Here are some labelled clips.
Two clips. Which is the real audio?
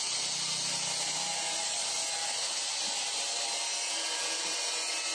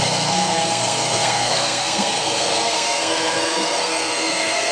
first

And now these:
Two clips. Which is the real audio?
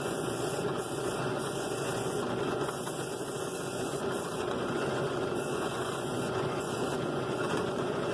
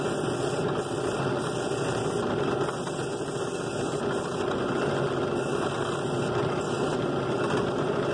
second